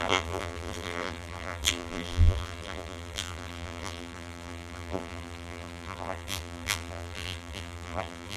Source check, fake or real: fake